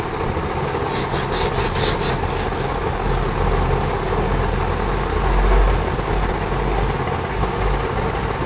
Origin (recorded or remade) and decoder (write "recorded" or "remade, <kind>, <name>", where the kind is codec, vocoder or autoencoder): recorded